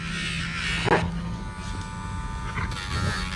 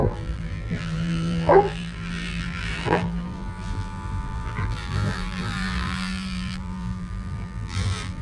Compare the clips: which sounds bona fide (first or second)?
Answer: first